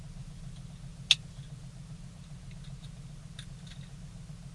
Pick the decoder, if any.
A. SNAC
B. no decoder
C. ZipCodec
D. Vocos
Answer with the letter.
B